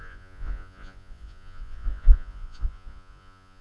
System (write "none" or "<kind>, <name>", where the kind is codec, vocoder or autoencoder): vocoder, Vocos